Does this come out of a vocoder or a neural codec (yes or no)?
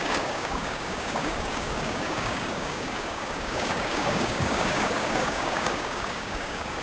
yes